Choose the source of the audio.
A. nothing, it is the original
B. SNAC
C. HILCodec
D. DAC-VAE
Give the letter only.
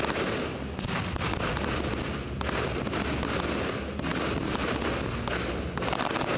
A